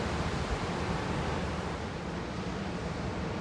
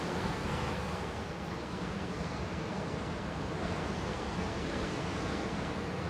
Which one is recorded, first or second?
first